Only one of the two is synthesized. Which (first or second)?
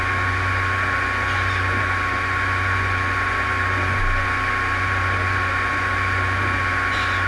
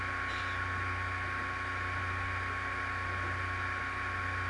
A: first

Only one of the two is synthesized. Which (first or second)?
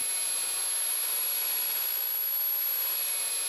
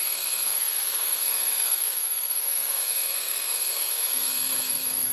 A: second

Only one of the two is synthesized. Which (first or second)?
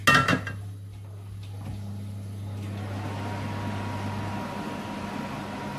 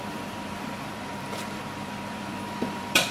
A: second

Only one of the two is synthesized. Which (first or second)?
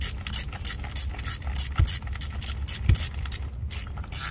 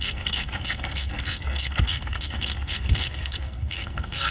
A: second